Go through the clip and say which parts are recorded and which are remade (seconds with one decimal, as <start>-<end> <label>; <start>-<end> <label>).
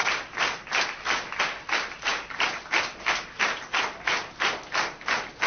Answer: 0.0-5.5 recorded